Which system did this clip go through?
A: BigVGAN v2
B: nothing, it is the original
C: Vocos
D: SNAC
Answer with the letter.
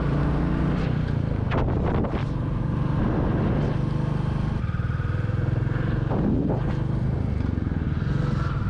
B